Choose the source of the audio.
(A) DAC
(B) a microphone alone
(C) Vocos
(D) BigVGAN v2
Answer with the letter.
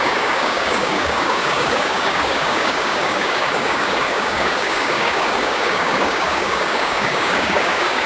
A